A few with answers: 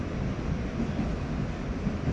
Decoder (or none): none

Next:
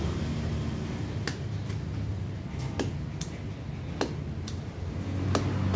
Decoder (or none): none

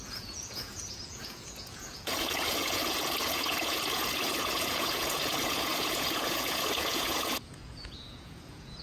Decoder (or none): vocoder, Vocos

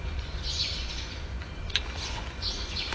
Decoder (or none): vocoder, Vocos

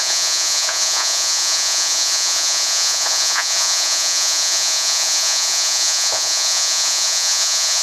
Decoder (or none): vocoder, Vocos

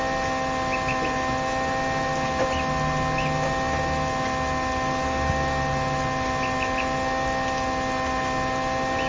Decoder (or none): none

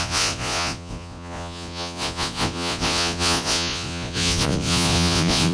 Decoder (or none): vocoder, Vocos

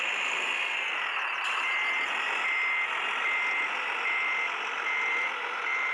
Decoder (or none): none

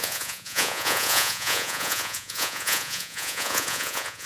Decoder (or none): vocoder, Vocos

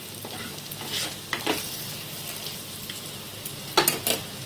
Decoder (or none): none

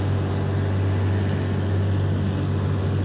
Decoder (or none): none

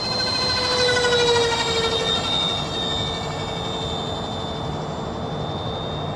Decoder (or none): none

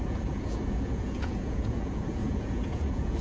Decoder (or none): vocoder, Vocos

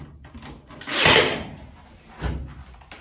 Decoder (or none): none